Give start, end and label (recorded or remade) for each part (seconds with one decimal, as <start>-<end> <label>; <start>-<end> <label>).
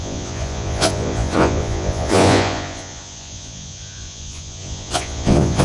0.0-5.6 remade